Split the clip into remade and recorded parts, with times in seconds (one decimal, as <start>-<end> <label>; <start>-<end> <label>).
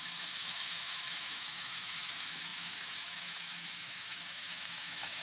0.0-5.2 remade